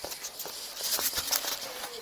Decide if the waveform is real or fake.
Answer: real